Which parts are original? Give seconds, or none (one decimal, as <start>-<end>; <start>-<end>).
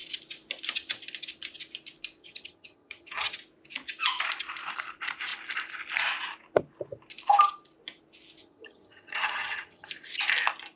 0.0-2.2; 3.4-8.4; 9.9-10.8